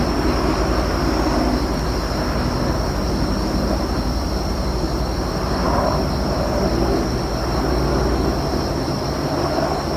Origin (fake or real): real